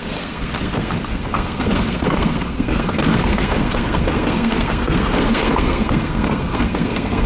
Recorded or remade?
remade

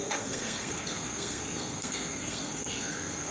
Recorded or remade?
remade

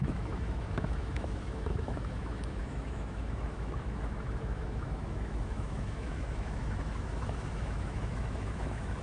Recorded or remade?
remade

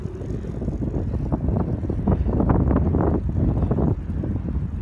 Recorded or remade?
recorded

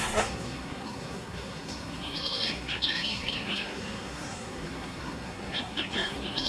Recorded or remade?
remade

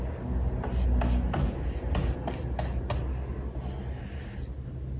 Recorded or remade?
recorded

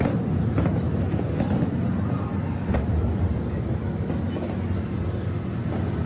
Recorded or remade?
recorded